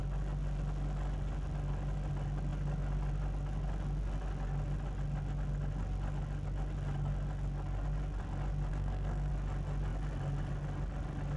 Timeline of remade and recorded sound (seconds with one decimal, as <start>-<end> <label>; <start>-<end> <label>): 0.0-8.7 recorded; 8.7-9.3 remade; 9.3-11.4 recorded